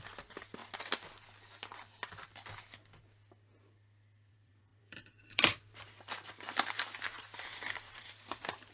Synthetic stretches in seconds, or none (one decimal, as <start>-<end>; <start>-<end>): 0.0-0.6; 4.3-8.7